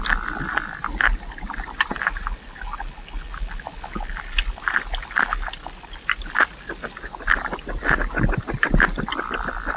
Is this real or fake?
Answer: real